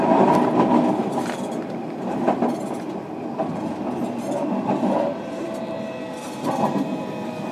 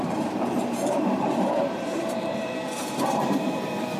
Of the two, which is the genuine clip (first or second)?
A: first